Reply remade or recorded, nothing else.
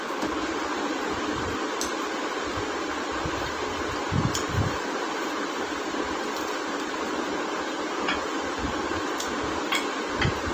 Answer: recorded